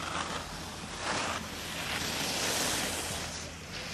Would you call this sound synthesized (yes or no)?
no